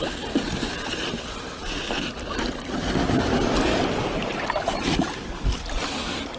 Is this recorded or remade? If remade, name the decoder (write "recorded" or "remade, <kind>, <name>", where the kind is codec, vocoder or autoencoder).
recorded